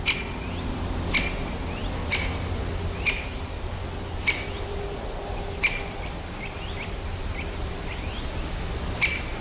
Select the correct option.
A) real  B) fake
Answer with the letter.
A